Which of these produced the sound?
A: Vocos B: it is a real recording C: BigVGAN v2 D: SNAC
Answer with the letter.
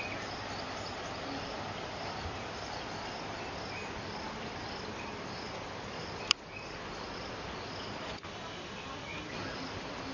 B